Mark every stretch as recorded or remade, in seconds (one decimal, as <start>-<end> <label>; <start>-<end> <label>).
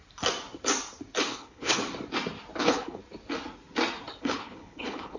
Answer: 0.0-1.2 recorded; 1.2-1.8 remade; 1.8-2.6 recorded; 2.6-3.0 remade; 3.0-4.2 recorded; 4.2-5.2 remade